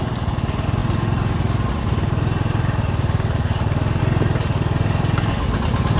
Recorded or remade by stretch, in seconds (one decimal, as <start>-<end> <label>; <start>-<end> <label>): 0.0-6.0 recorded